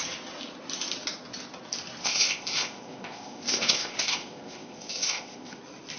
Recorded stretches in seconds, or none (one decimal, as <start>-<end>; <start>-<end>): 0.0-2.0; 5.6-6.0